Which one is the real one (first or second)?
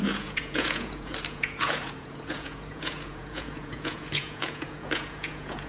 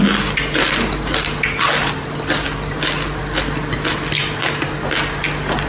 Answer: second